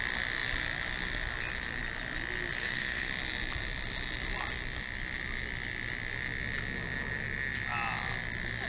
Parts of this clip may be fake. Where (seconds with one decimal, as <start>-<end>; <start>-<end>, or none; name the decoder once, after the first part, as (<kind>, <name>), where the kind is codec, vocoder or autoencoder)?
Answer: 2.6-3.1 (codec, SNAC)